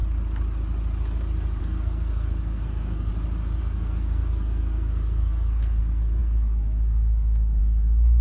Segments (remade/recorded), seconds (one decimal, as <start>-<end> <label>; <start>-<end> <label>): 0.0-1.6 recorded; 1.6-3.1 remade; 3.1-3.6 recorded; 3.6-8.2 remade